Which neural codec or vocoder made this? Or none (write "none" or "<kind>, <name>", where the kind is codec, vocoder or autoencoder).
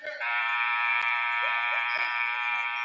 vocoder, BigVGAN v2